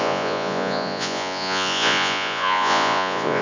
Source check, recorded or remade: remade